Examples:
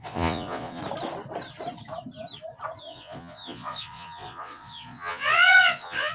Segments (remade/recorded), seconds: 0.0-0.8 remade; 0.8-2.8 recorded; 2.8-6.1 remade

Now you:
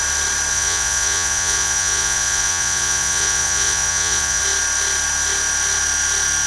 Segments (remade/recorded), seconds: 0.0-0.5 recorded; 0.5-4.4 remade; 4.4-6.5 recorded

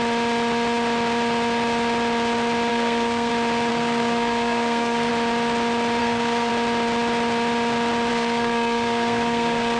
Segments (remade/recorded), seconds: 0.0-2.7 recorded; 2.7-3.3 remade; 3.3-3.7 recorded; 3.7-5.1 remade; 5.1-6.0 recorded; 6.0-6.5 remade; 6.5-8.1 recorded; 8.1-9.8 remade

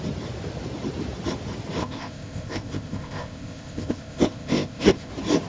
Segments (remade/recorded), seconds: 0.0-1.8 recorded; 1.8-5.1 remade; 5.1-5.5 recorded